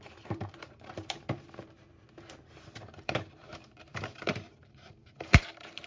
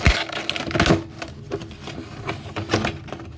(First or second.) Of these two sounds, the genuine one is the second